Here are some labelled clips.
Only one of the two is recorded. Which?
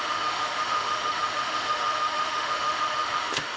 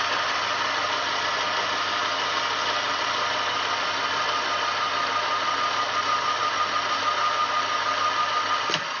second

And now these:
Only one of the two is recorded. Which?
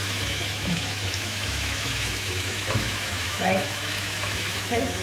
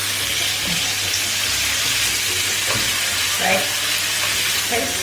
second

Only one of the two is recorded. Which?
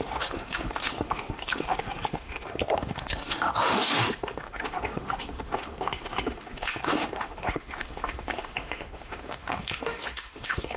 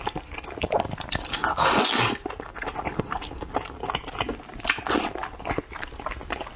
second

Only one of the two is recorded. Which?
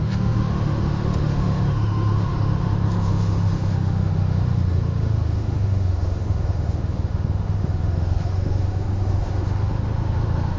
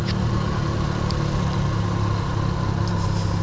second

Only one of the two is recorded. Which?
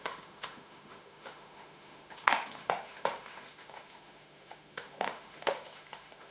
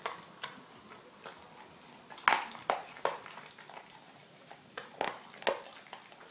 second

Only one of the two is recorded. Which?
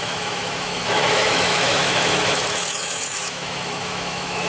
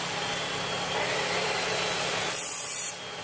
second